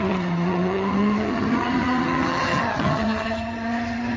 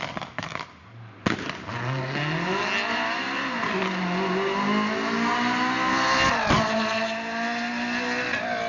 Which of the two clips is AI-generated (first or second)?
first